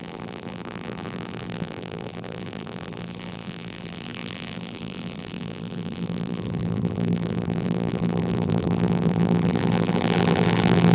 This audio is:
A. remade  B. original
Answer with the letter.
A